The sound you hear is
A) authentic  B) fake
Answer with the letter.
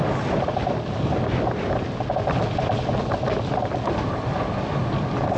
A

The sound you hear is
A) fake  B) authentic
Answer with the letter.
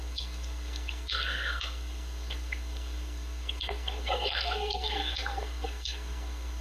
A